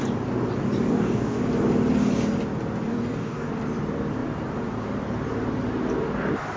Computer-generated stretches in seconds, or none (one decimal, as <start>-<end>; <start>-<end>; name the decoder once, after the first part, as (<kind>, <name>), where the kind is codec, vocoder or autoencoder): 0.9-1.4 (codec, DAC); 2.9-3.5